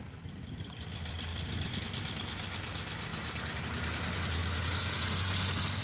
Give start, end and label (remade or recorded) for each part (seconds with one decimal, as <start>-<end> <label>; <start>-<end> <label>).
0.0-3.1 remade; 3.1-3.6 recorded; 3.6-4.4 remade; 4.4-5.8 recorded